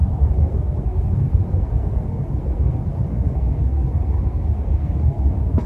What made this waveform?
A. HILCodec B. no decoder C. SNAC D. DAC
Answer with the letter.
C